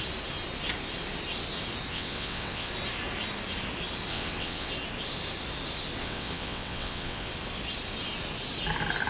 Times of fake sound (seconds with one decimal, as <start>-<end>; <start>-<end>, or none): 1.9-2.7; 4.1-4.7; 6.0-7.3